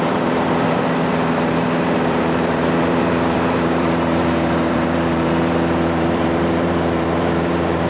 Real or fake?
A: fake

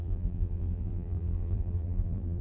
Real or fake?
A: fake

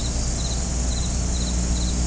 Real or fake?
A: real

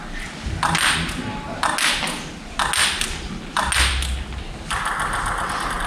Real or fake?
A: real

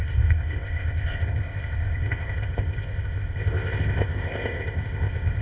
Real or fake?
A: fake